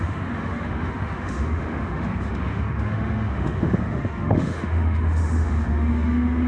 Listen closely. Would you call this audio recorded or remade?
remade